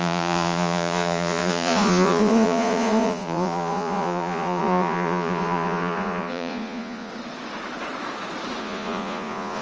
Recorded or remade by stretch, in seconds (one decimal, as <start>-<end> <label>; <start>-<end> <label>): 0.0-7.1 remade; 7.1-8.6 recorded; 8.6-9.6 remade